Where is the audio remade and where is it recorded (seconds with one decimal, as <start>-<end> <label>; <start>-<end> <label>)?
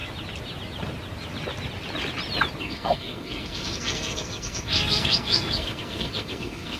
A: 0.0-2.6 recorded; 2.6-6.8 remade